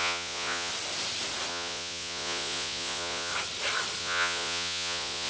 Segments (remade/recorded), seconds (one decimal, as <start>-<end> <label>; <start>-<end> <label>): 0.0-0.7 remade; 0.7-1.5 recorded; 1.5-3.3 remade; 3.3-4.0 recorded; 4.0-5.3 remade